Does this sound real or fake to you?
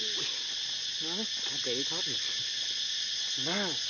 real